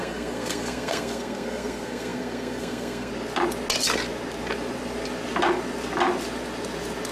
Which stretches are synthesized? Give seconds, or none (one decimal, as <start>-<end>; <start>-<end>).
0.0-3.1